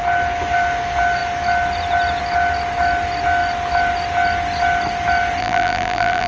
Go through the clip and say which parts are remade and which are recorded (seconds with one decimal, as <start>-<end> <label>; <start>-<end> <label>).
0.0-5.4 recorded; 5.4-6.3 remade